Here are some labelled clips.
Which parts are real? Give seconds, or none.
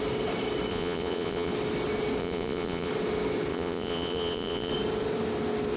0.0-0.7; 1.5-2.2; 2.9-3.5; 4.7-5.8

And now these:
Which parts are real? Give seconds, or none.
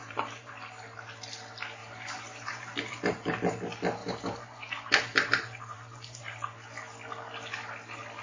0.5-1.8; 3.3-4.0; 6.2-8.2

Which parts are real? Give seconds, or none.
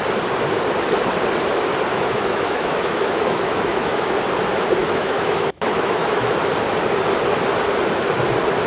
0.0-1.9; 4.1-4.8; 6.5-8.7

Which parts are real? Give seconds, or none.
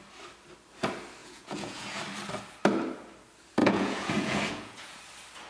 0.0-1.2; 2.0-3.6; 5.0-5.5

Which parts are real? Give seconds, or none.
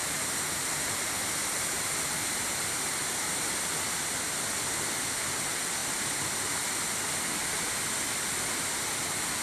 0.0-9.4